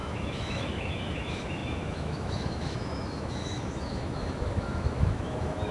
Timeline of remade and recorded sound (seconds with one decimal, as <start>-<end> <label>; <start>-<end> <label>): 0.0-5.7 remade